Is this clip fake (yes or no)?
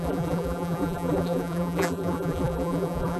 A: yes